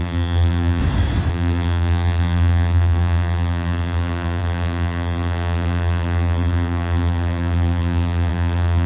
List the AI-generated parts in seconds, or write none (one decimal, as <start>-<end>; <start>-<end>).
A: 0.0-0.8; 1.3-8.9